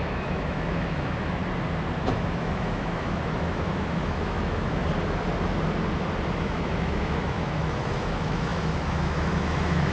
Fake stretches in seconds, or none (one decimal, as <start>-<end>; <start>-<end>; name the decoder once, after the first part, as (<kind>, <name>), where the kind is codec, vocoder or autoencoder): 0.0-1.4 (autoencoder, DAC-VAE); 2.1-4.8; 6.4-9.9

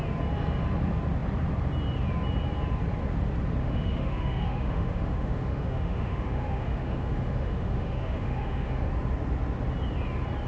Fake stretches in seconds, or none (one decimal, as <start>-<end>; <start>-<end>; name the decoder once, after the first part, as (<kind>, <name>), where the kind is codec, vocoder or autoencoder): 3.6-8.9 (autoencoder, DAC-VAE)

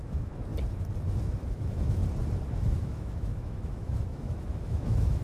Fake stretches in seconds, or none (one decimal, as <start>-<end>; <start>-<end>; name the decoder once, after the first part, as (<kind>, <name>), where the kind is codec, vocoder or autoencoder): 0.0-0.5 (autoencoder, DAC-VAE); 1.5-2.0; 2.6-5.2

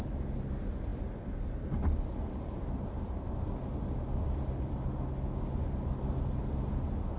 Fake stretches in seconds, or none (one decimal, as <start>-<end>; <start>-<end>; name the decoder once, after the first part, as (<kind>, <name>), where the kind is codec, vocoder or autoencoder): none

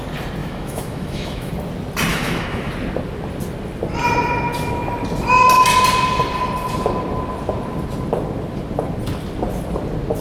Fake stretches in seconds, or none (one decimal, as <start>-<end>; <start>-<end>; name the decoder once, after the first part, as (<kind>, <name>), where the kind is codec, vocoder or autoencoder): 0.4-1.5 (autoencoder, DAC-VAE); 2.1-2.7

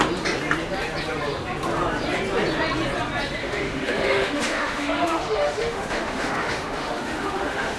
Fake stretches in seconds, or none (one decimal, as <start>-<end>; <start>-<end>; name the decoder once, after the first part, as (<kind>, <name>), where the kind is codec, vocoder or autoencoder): 3.4-7.8 (autoencoder, DAC-VAE)